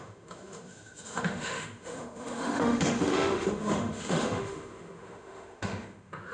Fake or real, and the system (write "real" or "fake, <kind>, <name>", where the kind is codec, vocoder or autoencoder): fake, autoencoder, DAC-VAE